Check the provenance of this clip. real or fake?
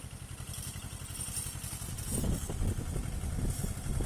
real